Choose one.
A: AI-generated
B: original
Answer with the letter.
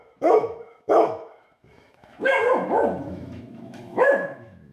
A